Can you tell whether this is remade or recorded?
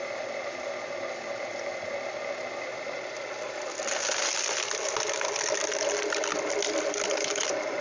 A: recorded